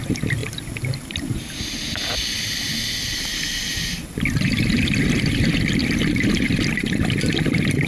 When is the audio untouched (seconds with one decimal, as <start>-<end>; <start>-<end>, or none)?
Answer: 0.0-7.9